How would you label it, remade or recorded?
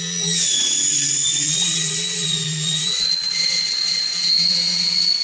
remade